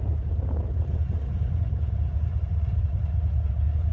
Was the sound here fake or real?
fake